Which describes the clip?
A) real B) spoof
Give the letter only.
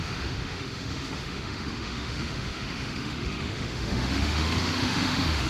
B